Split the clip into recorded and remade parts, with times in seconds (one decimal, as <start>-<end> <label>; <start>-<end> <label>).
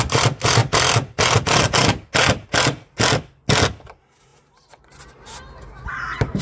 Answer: 0.0-6.4 recorded